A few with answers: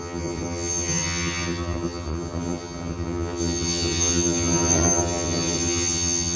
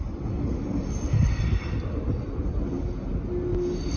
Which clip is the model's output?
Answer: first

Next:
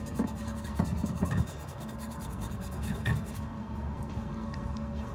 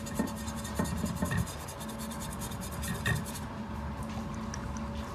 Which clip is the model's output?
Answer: first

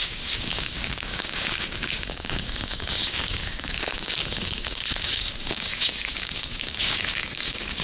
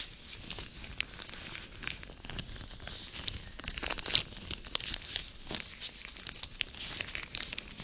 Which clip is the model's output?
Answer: first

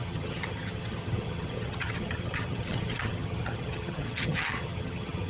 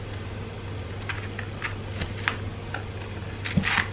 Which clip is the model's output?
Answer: first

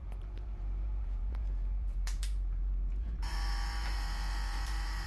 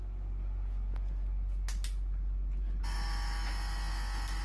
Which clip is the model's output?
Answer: first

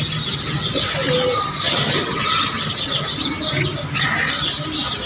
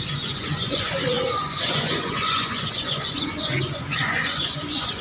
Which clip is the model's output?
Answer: second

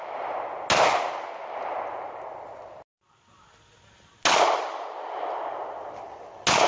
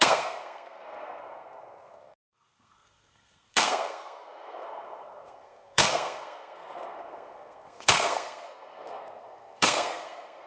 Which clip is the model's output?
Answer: second